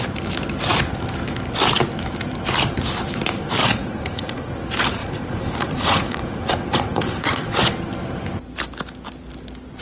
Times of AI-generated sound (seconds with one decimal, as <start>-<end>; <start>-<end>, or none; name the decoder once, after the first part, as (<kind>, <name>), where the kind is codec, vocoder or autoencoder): 3.6-4.5 (vocoder, Vocos); 5.0-7.6